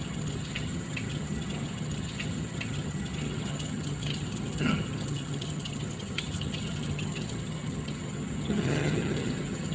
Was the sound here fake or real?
fake